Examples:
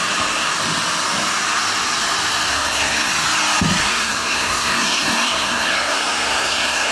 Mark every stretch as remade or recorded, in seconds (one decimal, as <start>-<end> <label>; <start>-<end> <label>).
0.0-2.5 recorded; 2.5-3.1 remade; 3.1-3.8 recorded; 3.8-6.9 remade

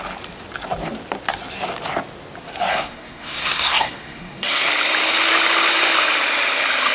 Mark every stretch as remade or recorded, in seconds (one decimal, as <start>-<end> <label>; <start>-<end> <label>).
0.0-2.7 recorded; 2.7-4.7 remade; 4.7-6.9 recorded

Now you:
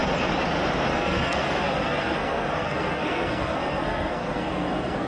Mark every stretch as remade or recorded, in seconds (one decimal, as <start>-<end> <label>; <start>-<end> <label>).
0.0-0.9 recorded; 0.9-5.1 remade

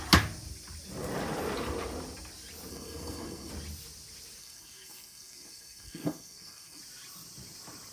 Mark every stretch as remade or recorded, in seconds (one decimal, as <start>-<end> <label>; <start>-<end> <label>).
0.0-2.7 recorded; 2.7-3.5 remade; 3.5-4.4 recorded; 4.4-6.8 remade; 6.8-7.9 recorded

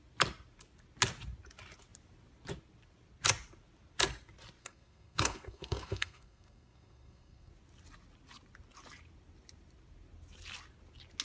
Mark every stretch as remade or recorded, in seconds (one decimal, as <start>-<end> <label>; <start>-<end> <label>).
0.0-4.6 recorded; 4.6-7.5 remade; 7.5-11.2 recorded

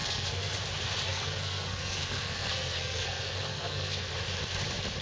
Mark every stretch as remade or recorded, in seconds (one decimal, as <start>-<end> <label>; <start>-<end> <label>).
0.0-0.6 remade; 0.6-1.1 recorded; 1.1-4.1 remade; 4.1-5.0 recorded

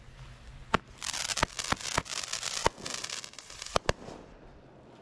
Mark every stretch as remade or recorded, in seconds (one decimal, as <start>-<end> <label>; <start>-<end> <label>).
0.0-5.0 recorded